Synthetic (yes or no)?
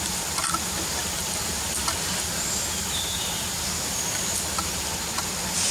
no